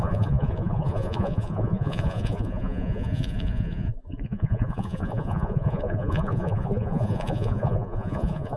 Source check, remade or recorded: remade